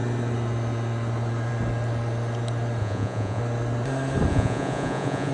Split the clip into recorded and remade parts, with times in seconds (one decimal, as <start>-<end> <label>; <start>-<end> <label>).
0.0-2.8 recorded; 2.8-3.4 remade; 3.4-4.3 recorded; 4.3-5.3 remade